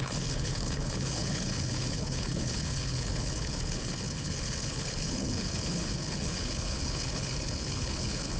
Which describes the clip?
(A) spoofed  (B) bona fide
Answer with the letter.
A